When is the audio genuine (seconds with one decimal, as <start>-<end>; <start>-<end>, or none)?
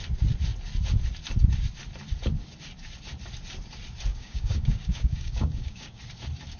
0.0-4.1; 6.0-6.6